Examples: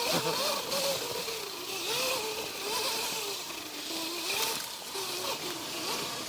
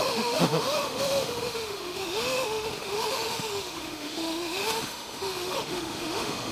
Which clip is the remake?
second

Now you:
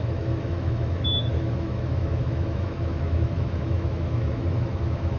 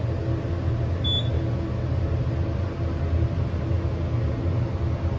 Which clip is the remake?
first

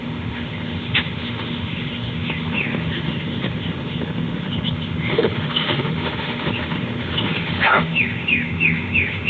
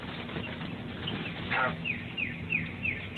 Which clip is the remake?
first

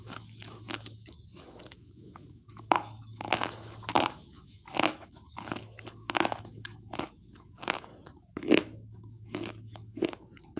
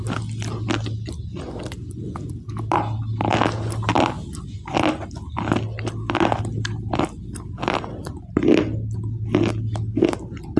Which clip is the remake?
first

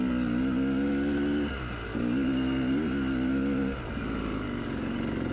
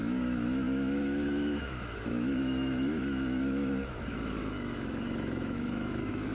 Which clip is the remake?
second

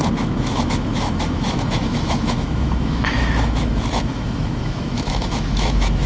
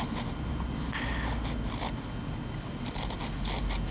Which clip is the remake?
first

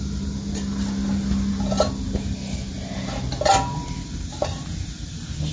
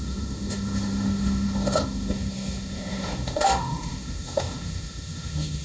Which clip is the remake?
second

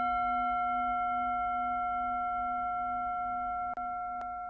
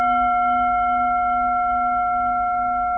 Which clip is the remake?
second